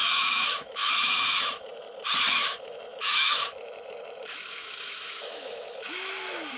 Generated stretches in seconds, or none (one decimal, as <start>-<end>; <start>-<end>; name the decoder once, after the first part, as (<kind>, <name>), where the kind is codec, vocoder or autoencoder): 0.0-1.7 (autoencoder, DAC-VAE); 2.3-6.6